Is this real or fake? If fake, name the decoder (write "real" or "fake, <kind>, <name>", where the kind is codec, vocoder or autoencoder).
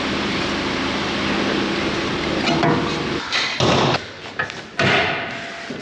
real